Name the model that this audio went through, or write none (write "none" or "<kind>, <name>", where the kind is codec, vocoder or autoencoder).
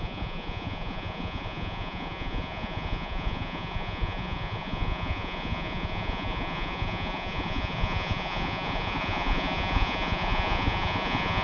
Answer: vocoder, Vocos